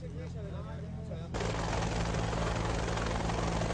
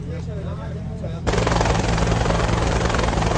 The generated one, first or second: second